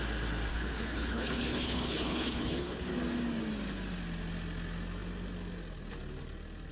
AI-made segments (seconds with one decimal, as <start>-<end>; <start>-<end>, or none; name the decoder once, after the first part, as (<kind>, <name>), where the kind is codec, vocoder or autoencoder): 0.5-2.9 (codec, HILCodec)